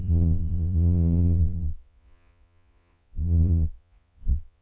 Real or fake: fake